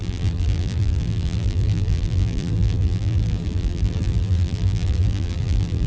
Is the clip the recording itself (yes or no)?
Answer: no